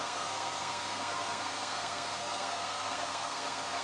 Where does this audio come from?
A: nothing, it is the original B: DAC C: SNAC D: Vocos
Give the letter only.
C